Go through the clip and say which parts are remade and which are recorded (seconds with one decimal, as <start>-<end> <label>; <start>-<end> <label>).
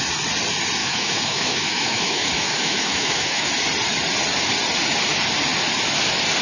0.0-0.8 recorded; 0.8-3.5 remade; 3.5-6.4 recorded